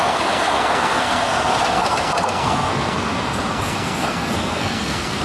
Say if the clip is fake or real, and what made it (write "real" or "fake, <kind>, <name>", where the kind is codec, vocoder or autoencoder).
fake, codec, SNAC